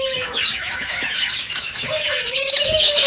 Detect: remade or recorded remade